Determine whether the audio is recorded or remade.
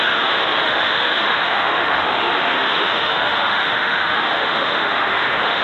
remade